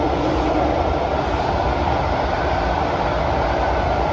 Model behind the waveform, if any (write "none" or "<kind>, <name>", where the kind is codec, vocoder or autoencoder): none